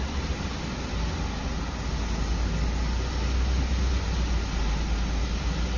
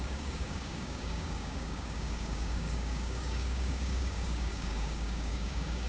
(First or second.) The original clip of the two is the first